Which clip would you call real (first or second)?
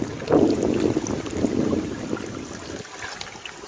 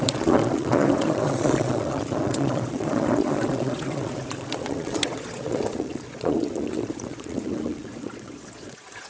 first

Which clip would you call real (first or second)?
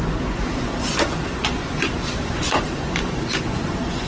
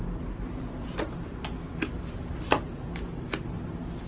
second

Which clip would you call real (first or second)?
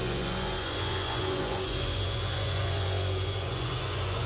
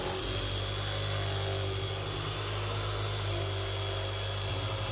second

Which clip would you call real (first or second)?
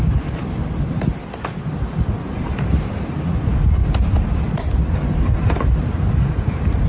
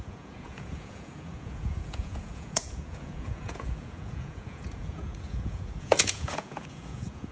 first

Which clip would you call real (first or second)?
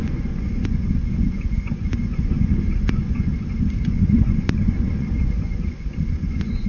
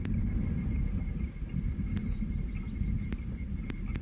second